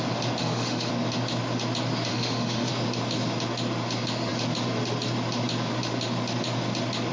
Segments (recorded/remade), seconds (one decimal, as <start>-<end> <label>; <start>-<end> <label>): 0.0-0.4 recorded; 0.4-0.9 remade; 0.9-2.1 recorded; 2.1-2.7 remade; 2.7-7.1 recorded